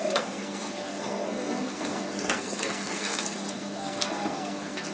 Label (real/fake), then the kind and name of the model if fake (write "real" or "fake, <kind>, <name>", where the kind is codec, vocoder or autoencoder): fake, codec, SNAC